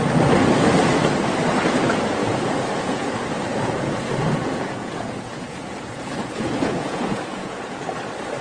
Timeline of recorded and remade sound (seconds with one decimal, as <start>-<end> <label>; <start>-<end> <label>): 0.0-2.2 recorded; 2.2-3.1 remade; 3.1-3.5 recorded; 3.5-7.9 remade; 7.9-8.4 recorded